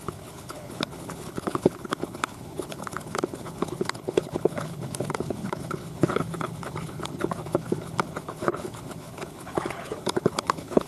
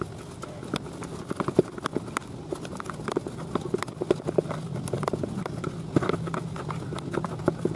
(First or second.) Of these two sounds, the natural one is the second